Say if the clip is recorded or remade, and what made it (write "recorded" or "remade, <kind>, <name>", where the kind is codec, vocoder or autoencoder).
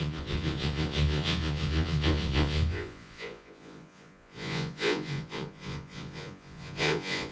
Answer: remade, vocoder, Vocos